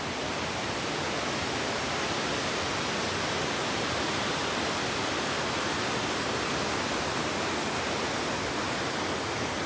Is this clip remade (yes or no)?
yes